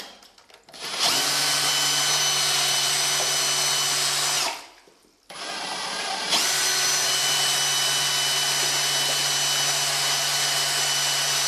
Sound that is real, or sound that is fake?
real